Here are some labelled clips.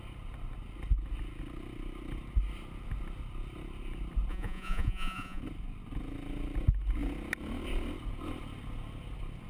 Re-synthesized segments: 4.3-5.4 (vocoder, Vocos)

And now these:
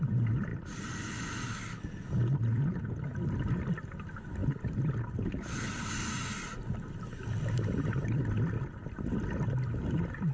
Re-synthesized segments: none

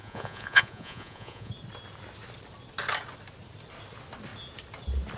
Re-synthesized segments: 0.0-1.5 (vocoder, Vocos)

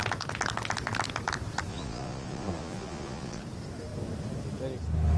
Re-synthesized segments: 1.7-3.4 (vocoder, Vocos)

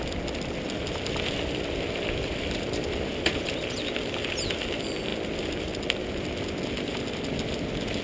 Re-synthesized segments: none

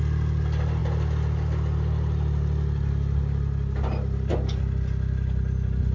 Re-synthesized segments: none